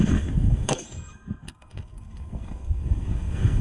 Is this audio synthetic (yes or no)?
yes